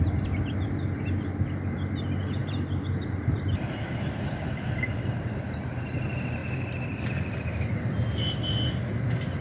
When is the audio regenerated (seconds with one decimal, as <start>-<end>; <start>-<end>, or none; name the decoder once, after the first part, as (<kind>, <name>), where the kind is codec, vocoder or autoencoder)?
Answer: 2.4-5.1 (vocoder, BigVGAN v2); 6.4-7.0